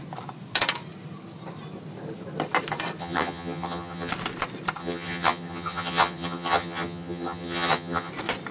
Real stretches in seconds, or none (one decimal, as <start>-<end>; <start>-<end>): 0.0-3.0; 4.1-4.8; 8.1-8.5